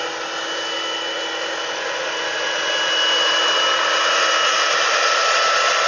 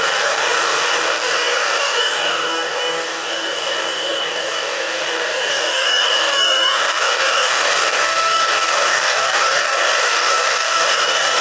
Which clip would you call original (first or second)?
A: first